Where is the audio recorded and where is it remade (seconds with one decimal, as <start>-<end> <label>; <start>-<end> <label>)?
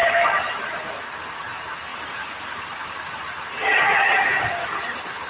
0.0-1.0 remade; 1.0-1.9 recorded; 1.9-4.2 remade; 4.2-5.3 recorded